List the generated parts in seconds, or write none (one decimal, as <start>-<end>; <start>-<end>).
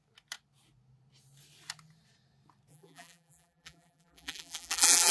2.7-5.1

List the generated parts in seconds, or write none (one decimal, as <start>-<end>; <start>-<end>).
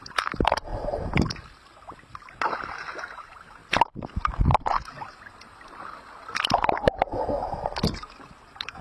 0.0-0.7; 2.9-3.6; 8.4-8.8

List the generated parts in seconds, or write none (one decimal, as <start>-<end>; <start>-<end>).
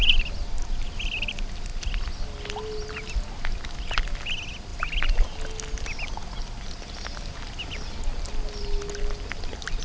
none